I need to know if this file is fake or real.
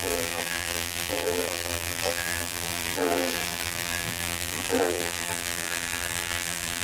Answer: fake